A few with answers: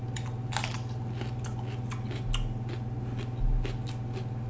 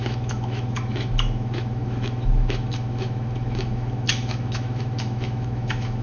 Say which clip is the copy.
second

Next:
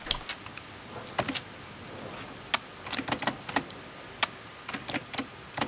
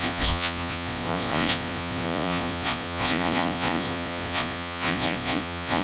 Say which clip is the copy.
second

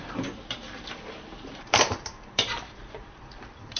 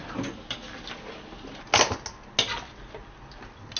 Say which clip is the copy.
first